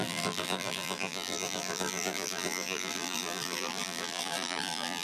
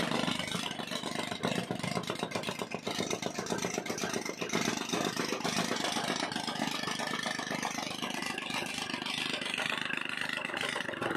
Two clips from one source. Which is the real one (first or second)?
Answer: second